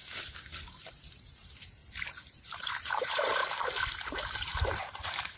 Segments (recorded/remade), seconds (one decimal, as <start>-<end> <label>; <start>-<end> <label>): 0.0-1.8 remade; 1.8-2.4 recorded; 2.4-3.4 remade; 3.4-4.3 recorded; 4.3-5.4 remade

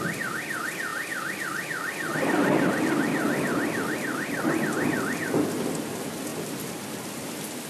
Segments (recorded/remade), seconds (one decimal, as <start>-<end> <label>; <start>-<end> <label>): 0.0-6.3 recorded; 6.3-7.3 remade; 7.3-7.7 recorded

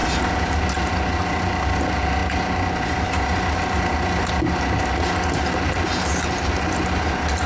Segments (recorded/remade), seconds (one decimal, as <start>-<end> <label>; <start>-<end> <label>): 0.0-7.5 recorded

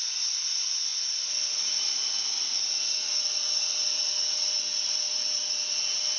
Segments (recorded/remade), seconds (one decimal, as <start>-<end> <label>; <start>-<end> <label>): 0.0-6.2 recorded

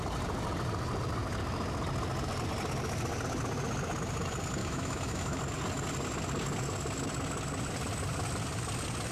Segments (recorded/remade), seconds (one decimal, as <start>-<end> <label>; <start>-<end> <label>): 0.0-4.6 recorded; 4.6-5.4 remade; 5.4-9.1 recorded